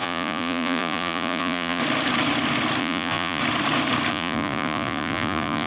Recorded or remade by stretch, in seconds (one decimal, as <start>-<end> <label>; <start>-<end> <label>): 0.0-1.8 remade; 1.8-2.8 recorded; 2.8-3.4 remade; 3.4-4.1 recorded; 4.1-5.7 remade